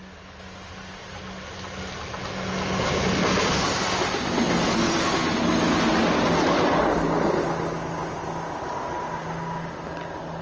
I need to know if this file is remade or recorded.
recorded